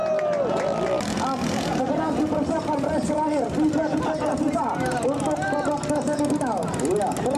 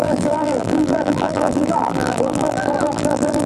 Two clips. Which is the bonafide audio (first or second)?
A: first